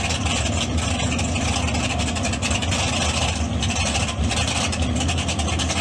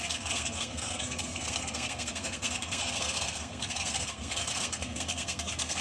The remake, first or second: second